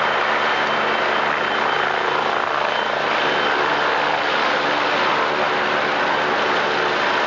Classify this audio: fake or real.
real